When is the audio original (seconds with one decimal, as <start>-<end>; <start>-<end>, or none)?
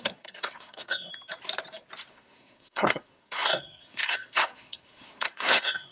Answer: 1.1-2.1